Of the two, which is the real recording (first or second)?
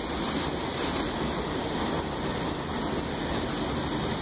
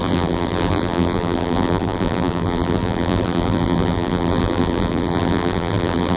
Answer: first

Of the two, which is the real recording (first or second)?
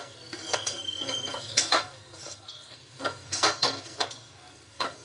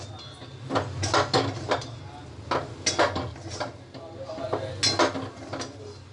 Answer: second